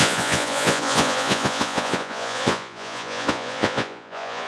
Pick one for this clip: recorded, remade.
remade